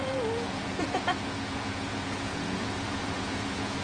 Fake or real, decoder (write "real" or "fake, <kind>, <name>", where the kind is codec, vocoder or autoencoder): fake, vocoder, Vocos